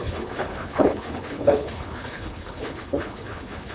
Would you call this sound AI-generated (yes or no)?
yes